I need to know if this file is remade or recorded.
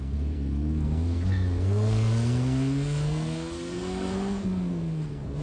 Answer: remade